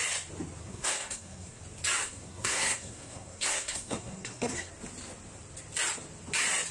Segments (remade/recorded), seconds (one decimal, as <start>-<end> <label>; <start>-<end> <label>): 0.0-0.6 recorded; 0.6-1.6 remade; 1.6-2.0 recorded; 2.0-4.7 remade; 4.7-6.7 recorded